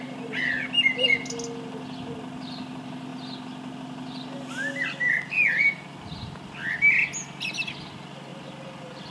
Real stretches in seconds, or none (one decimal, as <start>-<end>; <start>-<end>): 0.0-9.1